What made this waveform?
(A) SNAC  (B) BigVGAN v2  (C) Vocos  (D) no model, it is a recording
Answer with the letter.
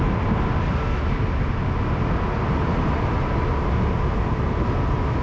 D